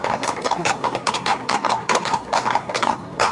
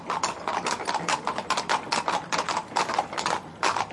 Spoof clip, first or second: first